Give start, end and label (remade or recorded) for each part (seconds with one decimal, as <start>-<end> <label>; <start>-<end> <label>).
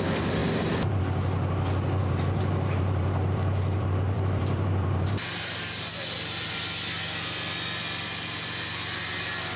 0.0-0.4 recorded; 0.4-1.0 remade; 1.0-2.0 recorded; 2.0-6.6 remade; 6.6-9.6 recorded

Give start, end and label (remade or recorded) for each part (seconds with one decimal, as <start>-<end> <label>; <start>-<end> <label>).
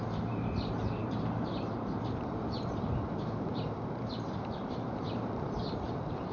0.0-6.3 remade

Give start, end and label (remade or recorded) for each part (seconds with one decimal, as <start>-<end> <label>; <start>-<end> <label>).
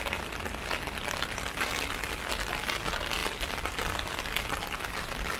0.0-5.4 recorded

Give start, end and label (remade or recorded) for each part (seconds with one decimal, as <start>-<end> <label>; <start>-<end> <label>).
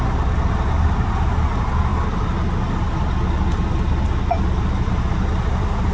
0.0-5.9 recorded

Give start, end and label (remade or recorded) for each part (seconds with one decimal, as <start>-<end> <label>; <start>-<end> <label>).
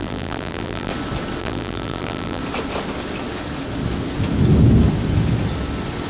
0.0-0.9 remade; 0.9-1.4 recorded; 1.4-2.4 remade; 2.4-6.1 recorded